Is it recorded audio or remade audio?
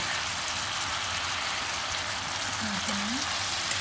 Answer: recorded